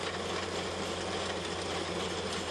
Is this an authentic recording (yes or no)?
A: yes